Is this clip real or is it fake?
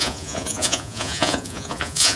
fake